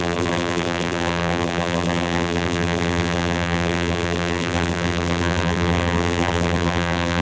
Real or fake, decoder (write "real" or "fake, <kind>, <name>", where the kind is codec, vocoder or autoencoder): fake, vocoder, BigVGAN v2